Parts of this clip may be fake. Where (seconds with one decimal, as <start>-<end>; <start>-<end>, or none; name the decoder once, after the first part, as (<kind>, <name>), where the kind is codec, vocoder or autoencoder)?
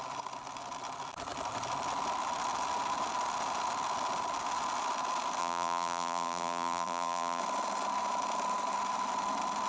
5.4-7.4 (vocoder, BigVGAN v2)